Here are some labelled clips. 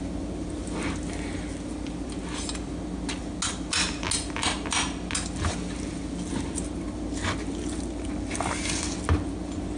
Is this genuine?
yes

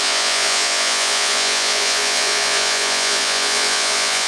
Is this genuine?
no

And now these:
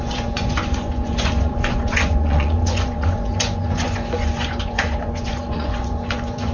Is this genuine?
no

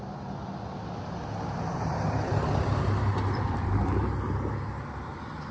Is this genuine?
yes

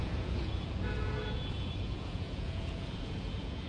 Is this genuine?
no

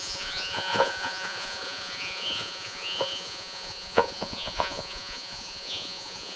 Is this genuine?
no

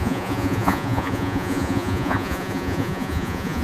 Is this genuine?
no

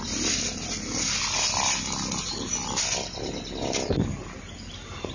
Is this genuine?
yes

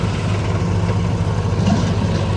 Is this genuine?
yes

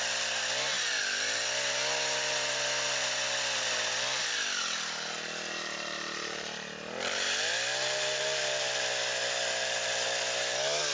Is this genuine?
yes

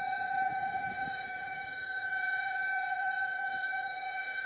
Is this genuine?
no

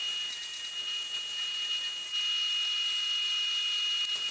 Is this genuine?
yes